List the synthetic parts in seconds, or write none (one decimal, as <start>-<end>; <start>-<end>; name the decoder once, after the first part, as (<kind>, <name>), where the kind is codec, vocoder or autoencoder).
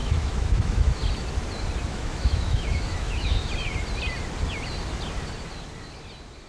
0.0-1.0 (autoencoder, DAC-VAE); 1.9-3.5